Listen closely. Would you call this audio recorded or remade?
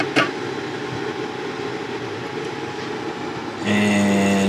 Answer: recorded